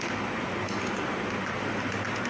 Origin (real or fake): real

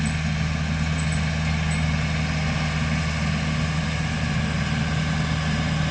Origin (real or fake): real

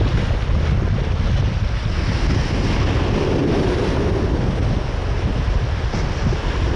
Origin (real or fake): real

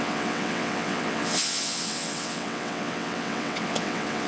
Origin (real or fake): fake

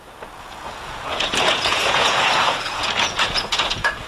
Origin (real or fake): fake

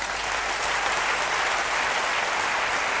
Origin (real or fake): real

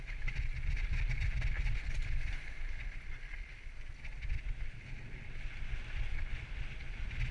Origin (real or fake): real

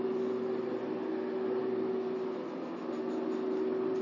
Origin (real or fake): real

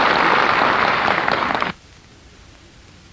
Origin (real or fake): real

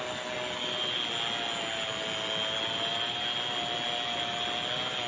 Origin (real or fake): real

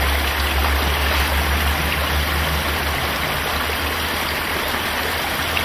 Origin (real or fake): real